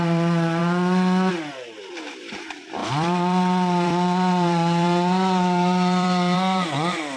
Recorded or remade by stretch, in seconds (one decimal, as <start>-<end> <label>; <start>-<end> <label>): 0.0-7.2 remade